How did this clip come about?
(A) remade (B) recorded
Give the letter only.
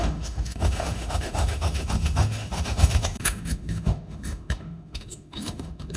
A